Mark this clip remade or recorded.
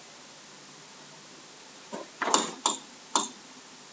recorded